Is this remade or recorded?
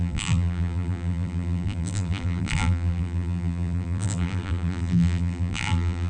remade